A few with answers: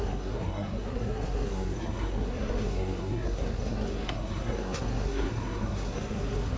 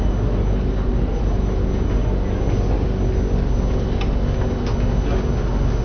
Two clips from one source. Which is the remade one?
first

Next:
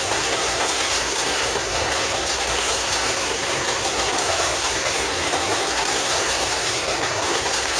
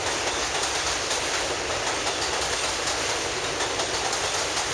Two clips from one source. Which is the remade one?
first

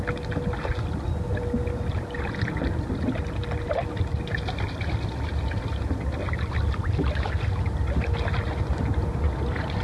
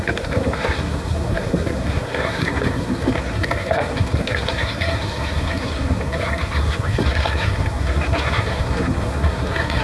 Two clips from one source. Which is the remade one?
second